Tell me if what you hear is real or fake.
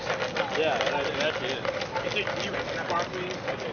real